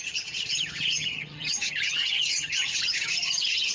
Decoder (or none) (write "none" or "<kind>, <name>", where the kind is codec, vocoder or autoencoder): vocoder, HiFi-GAN